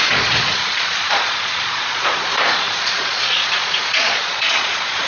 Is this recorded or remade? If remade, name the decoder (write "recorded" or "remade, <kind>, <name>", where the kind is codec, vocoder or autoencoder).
remade, vocoder, Vocos